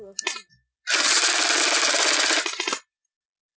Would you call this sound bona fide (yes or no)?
yes